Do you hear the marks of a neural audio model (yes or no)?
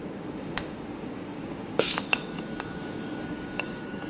yes